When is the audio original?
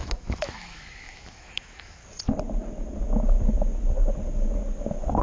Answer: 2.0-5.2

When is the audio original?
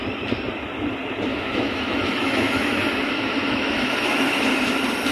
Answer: 0.0-1.3; 4.4-5.1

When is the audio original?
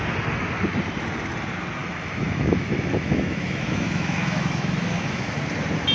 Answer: 0.0-1.8; 5.3-5.9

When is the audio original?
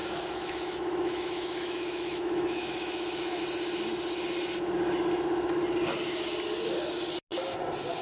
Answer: 3.4-8.0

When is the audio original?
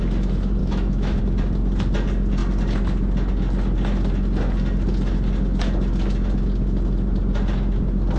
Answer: 0.0-0.6; 1.2-8.2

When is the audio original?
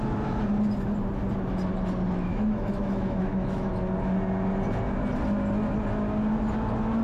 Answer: 0.0-2.3; 3.7-7.0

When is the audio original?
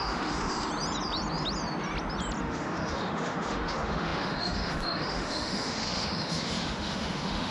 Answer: 0.7-2.4